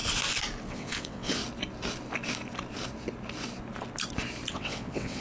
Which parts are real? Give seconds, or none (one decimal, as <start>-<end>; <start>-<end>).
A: 0.0-0.7; 1.4-4.5